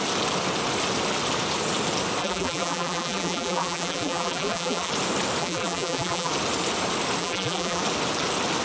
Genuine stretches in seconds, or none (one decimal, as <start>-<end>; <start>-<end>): 0.0-2.2; 4.9-5.4; 6.3-7.2; 7.8-8.6